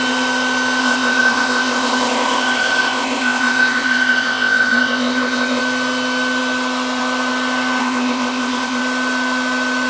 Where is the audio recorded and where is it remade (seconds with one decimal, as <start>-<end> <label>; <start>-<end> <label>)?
0.0-0.8 recorded; 0.8-5.6 remade; 5.6-7.8 recorded; 7.8-8.8 remade; 8.8-9.9 recorded